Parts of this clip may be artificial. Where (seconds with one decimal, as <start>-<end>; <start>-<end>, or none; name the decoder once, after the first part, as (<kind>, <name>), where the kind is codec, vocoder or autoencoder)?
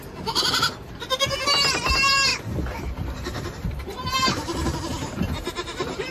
0.0-2.3 (vocoder, BigVGAN v2); 2.9-6.1